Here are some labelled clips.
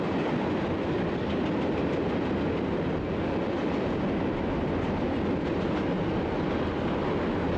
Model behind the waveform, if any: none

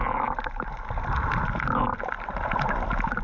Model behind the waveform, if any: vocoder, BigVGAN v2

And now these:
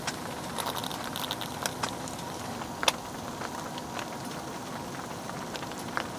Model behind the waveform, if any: none